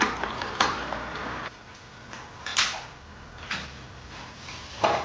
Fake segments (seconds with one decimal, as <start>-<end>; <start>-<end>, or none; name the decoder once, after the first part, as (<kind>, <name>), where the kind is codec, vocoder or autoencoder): none